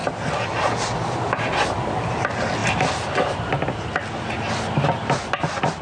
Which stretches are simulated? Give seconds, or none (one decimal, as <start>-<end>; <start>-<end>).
none